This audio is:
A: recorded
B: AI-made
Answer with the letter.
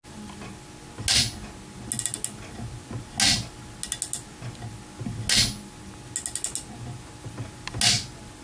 A